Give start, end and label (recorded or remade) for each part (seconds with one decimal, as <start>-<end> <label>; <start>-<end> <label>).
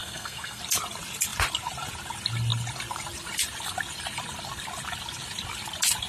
0.0-0.6 remade; 0.6-6.1 recorded